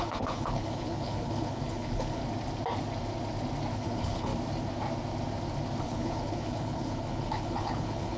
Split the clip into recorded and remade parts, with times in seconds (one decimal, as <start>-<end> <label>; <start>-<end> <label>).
0.0-2.2 remade; 2.2-3.7 recorded; 3.7-4.3 remade; 4.3-5.8 recorded; 5.8-8.2 remade